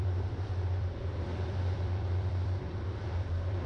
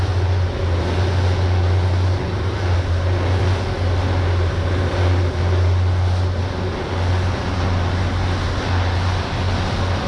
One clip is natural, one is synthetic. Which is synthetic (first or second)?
first